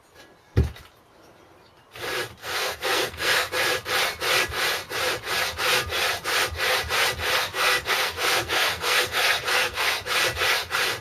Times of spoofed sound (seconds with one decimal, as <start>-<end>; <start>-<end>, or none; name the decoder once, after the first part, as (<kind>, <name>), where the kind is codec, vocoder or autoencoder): 2.4-3.5 (codec, SNAC); 7.4-10.0